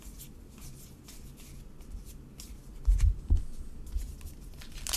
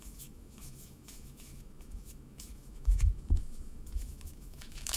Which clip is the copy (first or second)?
second